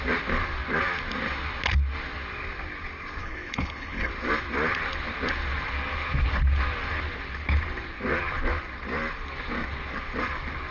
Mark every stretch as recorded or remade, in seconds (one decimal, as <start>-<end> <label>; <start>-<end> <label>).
0.0-3.2 recorded; 3.2-4.1 remade; 4.1-10.7 recorded